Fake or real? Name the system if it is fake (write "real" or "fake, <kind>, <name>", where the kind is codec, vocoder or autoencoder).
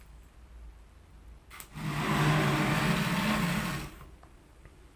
real